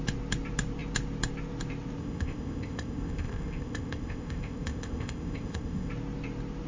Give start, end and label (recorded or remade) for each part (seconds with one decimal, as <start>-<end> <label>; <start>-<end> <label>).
0.0-2.0 recorded; 2.0-5.9 remade; 5.9-6.7 recorded